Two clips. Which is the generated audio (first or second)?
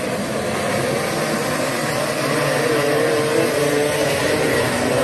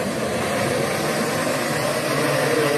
second